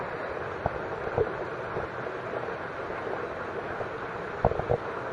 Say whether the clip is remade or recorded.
recorded